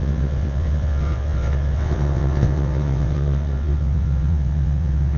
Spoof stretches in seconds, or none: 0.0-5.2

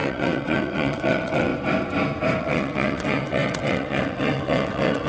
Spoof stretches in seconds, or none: 0.0-1.5; 2.4-5.1

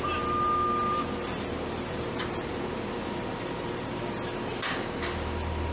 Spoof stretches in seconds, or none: 0.6-4.0

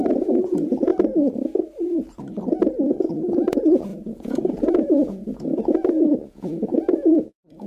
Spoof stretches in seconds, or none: 0.0-0.9; 3.3-7.7

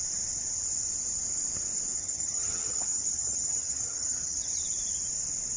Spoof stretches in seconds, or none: 2.0-4.6

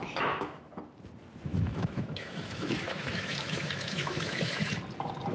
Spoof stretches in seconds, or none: 0.0-0.7; 1.5-4.7